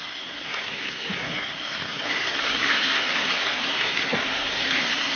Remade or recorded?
remade